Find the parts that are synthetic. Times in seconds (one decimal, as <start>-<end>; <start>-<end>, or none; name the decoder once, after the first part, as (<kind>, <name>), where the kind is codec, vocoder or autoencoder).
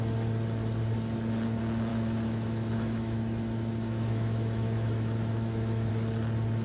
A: 1.9-5.9 (autoencoder, DAC-VAE)